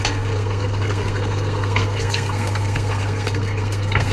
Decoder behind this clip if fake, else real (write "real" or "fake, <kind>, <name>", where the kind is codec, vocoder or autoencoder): fake, codec, SNAC